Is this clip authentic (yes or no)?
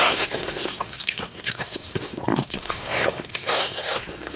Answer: no